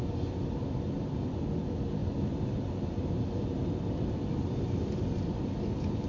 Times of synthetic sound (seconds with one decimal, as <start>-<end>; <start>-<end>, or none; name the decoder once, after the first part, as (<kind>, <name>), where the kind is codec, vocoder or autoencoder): none